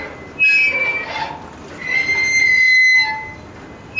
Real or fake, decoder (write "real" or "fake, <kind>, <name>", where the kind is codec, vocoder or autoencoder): real